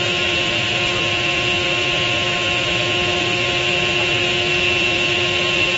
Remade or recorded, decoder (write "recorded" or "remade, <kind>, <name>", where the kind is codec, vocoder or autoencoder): recorded